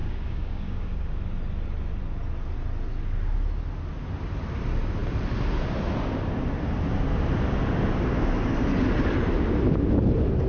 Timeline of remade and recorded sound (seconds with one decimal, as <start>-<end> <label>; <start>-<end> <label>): 0.0-1.2 remade; 1.2-10.5 recorded